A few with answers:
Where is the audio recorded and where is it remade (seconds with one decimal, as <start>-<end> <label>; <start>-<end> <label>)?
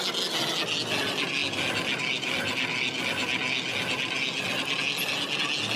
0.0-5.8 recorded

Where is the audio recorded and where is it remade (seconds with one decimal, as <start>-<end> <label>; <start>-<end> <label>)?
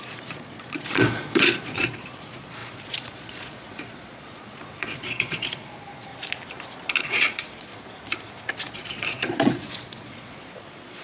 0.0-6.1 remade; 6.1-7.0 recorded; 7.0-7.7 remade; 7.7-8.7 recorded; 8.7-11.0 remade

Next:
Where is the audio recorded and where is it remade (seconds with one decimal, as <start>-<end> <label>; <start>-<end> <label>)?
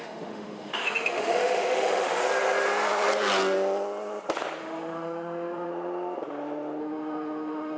0.0-2.2 remade; 2.2-4.6 recorded; 4.6-5.7 remade; 5.7-6.8 recorded; 6.8-7.8 remade